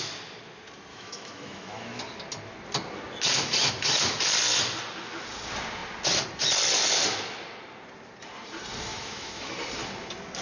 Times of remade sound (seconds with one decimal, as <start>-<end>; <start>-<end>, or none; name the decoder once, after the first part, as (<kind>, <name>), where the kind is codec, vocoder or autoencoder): 0.9-2.0 (autoencoder, DAC-VAE); 8.9-9.5